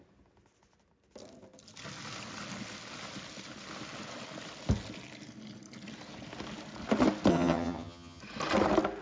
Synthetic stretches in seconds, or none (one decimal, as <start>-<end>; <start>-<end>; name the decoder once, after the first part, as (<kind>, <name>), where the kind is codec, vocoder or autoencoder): 7.3-8.2 (vocoder, HiFi-GAN)